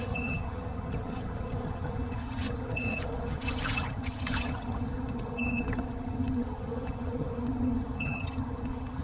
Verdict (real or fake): fake